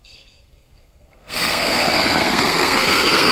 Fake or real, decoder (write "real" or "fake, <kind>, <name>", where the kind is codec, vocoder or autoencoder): fake, codec, SNAC